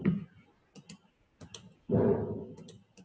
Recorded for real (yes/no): yes